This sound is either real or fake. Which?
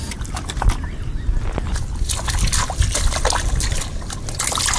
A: real